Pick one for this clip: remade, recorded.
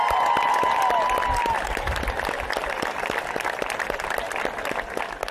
recorded